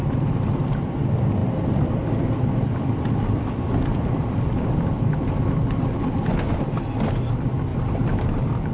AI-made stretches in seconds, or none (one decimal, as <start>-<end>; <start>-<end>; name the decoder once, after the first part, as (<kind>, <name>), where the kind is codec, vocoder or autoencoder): 1.4-6.0 (vocoder, BigVGAN v2); 7.7-8.7